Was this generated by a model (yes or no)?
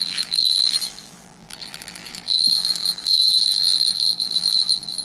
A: yes